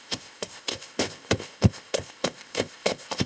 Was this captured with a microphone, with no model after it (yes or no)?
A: no